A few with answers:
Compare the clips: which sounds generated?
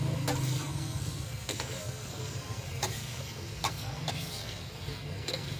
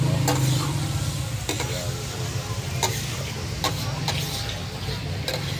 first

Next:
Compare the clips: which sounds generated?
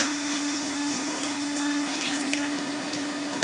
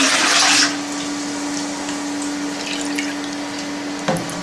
first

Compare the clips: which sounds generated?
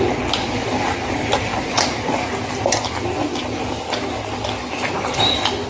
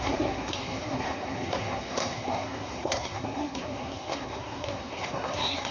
second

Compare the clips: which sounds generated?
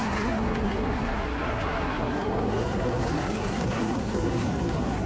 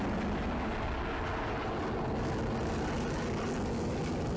first